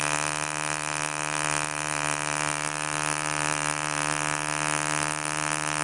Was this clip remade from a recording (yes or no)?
no